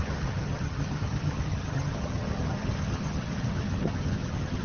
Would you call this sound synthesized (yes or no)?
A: yes